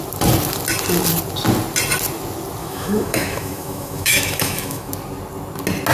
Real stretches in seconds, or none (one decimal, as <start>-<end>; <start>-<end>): 0.0-2.6; 4.9-5.9